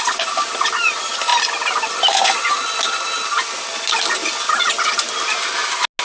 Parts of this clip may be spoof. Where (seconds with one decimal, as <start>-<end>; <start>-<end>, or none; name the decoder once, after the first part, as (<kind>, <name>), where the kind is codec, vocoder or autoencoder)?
none